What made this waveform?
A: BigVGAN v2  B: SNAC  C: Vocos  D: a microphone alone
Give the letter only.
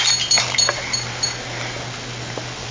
D